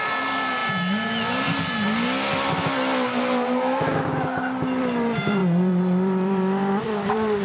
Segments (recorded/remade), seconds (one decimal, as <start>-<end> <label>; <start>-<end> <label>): 0.0-0.6 remade; 0.6-4.8 recorded; 4.8-7.4 remade